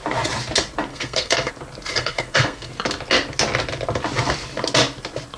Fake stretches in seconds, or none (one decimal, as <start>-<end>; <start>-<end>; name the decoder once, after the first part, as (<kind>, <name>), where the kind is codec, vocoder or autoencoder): 0.9-1.5 (codec, SNAC); 1.9-2.7